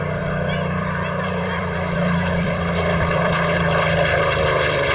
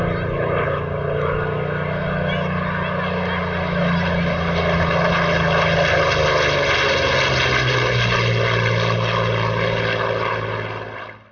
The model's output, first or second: first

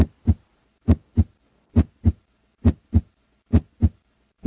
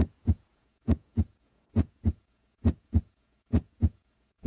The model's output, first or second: second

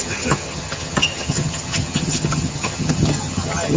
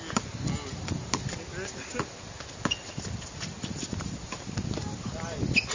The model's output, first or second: first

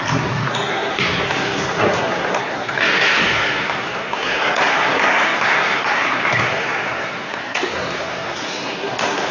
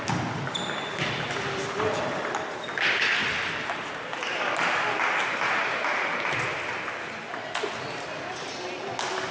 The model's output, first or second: first